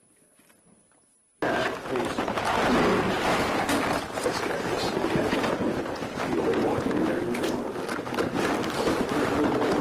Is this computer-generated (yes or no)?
no